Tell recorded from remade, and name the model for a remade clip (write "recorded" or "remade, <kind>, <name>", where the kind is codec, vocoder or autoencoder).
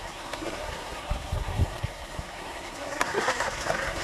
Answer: remade, codec, SNAC